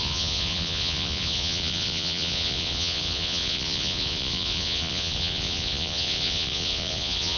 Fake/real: fake